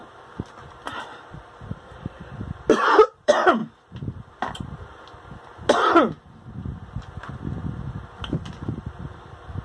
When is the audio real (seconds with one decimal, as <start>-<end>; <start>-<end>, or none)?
0.0-1.0; 3.6-8.6